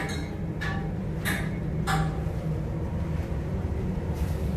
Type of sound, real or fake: real